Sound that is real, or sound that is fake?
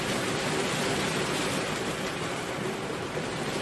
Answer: real